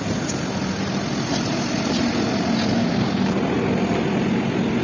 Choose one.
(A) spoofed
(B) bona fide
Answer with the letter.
B